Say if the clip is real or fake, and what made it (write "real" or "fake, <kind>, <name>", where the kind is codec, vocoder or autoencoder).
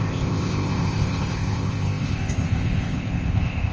fake, codec, ZipCodec